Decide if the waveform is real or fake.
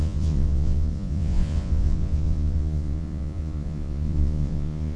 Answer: fake